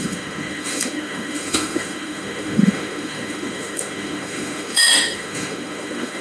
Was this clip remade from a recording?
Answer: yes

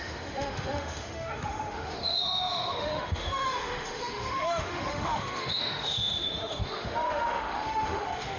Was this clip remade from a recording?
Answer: yes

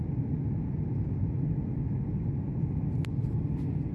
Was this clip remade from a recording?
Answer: no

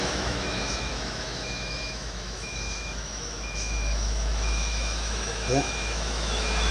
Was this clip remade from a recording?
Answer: yes